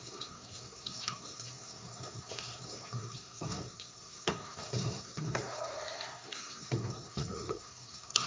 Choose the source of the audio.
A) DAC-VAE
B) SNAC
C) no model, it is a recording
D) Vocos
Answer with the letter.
B